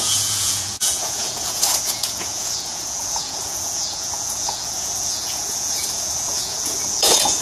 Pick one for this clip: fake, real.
fake